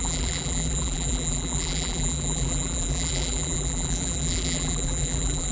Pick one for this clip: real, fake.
fake